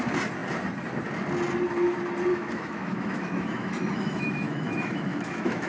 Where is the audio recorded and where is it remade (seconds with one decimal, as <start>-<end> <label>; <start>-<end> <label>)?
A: 0.0-2.3 recorded; 2.3-5.7 remade